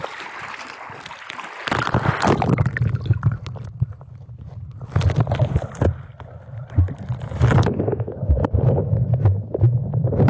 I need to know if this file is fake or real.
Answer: real